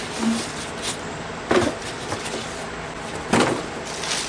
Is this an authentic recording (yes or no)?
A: yes